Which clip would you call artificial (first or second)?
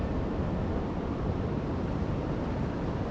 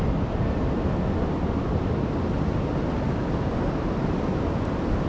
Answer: first